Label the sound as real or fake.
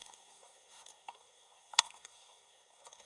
fake